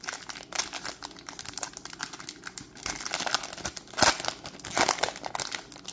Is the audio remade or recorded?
recorded